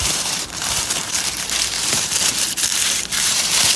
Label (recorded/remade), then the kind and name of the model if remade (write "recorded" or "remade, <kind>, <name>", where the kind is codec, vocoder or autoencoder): remade, vocoder, BigVGAN v2